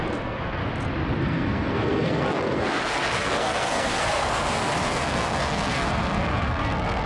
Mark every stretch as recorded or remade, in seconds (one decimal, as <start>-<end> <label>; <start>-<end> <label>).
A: 0.0-0.6 remade; 0.6-1.2 recorded; 1.2-7.1 remade